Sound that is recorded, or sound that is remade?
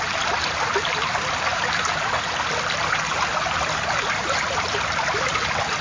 recorded